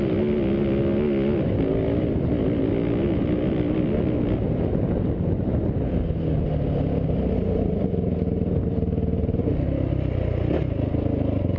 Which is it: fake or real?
real